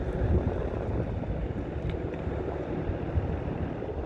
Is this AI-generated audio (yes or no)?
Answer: no